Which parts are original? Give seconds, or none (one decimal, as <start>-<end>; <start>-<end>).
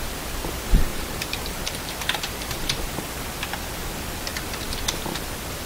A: 0.0-0.9; 3.0-5.7